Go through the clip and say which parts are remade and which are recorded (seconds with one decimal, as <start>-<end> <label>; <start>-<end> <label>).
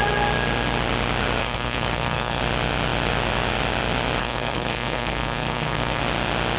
0.0-1.4 recorded; 1.4-2.4 remade; 2.4-4.2 recorded; 4.2-6.0 remade; 6.0-6.6 recorded